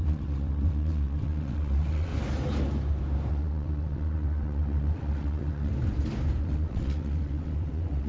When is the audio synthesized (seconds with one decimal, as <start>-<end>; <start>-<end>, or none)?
0.0-2.1; 3.3-5.7; 6.4-8.1